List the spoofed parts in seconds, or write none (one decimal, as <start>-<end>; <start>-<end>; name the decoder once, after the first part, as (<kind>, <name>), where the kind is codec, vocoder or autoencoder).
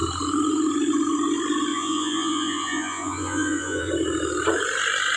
1.7-3.9 (vocoder, Vocos)